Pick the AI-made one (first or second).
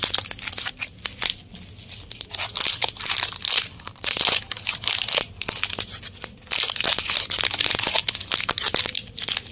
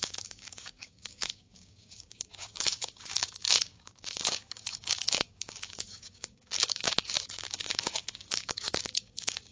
second